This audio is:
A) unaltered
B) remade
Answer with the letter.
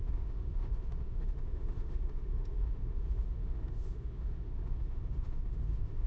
B